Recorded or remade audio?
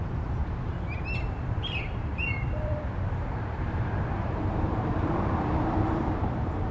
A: remade